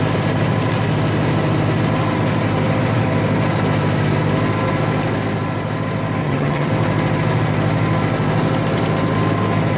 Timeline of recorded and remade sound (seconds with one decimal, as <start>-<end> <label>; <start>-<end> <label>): 0.0-6.2 recorded; 6.2-6.7 remade; 6.7-9.8 recorded